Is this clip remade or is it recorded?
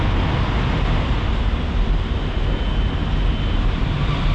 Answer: recorded